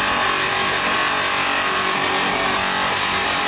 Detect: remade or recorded recorded